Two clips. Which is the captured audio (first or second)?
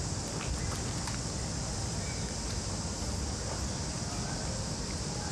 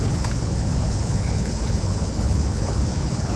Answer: first